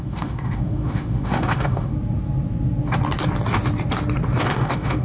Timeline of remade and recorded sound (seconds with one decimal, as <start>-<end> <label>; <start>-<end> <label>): 0.0-1.9 remade; 1.9-4.4 recorded; 4.4-5.0 remade